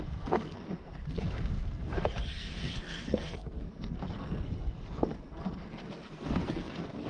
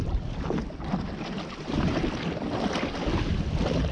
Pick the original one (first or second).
second